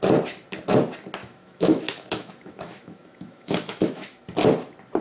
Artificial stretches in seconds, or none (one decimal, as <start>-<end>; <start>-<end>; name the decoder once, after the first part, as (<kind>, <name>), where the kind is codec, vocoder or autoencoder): 1.2-4.2 (autoencoder, DAC-VAE)